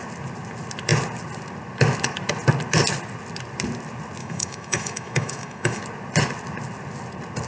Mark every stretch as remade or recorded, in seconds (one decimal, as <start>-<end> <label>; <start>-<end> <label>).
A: 0.0-4.2 recorded; 4.2-5.8 remade; 5.8-7.5 recorded